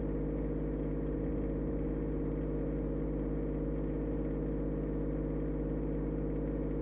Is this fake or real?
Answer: real